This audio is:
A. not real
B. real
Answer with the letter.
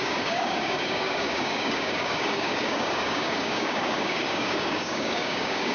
A